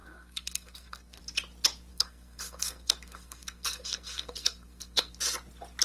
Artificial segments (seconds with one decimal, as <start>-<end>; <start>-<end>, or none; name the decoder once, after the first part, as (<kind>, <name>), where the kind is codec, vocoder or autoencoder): 0.0-1.2 (codec, SNAC); 1.9-5.1